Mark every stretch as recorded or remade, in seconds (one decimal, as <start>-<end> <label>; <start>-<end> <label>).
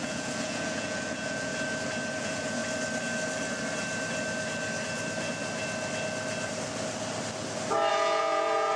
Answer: 0.0-1.5 remade; 1.5-2.2 recorded; 2.2-2.6 remade; 2.6-7.9 recorded; 7.9-8.8 remade